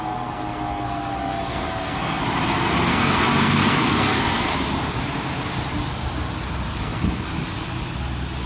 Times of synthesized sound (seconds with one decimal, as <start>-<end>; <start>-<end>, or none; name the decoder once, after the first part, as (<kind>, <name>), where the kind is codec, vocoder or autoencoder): 0.0-2.2 (codec, SNAC); 2.9-4.5; 6.8-7.3